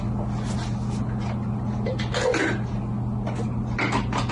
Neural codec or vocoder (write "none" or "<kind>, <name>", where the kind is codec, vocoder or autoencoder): none